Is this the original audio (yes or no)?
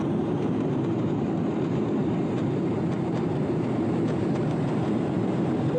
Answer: no